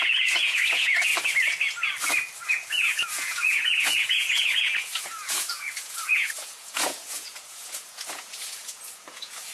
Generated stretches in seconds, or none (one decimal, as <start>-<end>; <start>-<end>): 0.0-1.1; 2.5-9.5